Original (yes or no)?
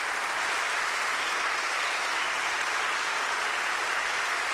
yes